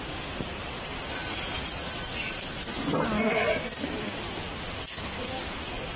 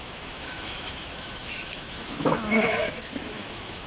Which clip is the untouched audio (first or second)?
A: first